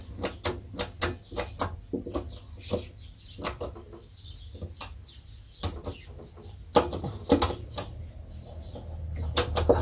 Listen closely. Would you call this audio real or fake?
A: real